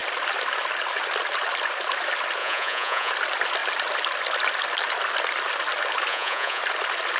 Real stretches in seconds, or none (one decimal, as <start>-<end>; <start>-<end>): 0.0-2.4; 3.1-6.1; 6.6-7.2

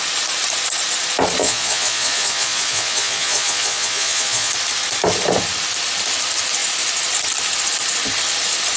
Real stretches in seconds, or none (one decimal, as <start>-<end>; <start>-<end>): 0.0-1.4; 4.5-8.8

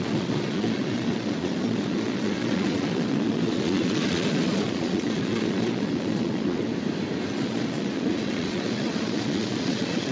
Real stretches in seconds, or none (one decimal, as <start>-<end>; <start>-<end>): 6.7-7.3

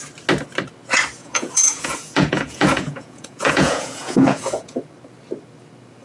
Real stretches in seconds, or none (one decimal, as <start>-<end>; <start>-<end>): 0.0-1.2; 4.8-6.0

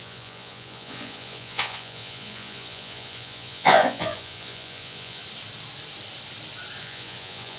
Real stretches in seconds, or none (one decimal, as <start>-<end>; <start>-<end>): 5.2-6.8

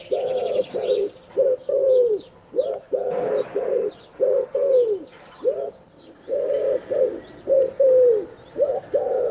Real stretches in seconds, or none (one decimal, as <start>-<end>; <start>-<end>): 0.0-9.3

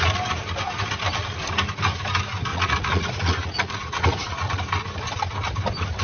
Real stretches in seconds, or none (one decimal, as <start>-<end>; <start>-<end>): 0.0-2.5; 4.6-6.0